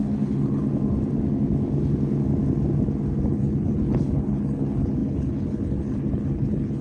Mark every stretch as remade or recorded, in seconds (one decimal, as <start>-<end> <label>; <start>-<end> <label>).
0.0-0.6 remade; 0.6-3.3 recorded; 3.3-6.8 remade